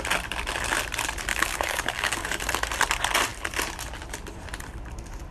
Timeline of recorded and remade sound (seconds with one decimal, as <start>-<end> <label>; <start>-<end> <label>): 0.0-1.3 recorded; 1.3-2.5 remade; 2.5-5.3 recorded